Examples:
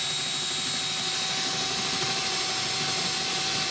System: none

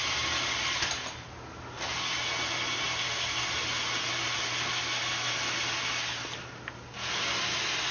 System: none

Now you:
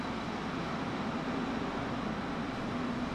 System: none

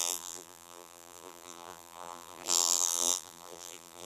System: vocoder, BigVGAN v2